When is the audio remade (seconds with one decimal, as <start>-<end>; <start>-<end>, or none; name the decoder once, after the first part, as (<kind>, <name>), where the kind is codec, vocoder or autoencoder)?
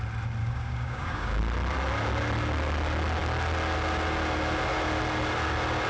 0.4-1.4 (codec, DAC)